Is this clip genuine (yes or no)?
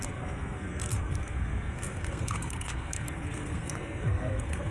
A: no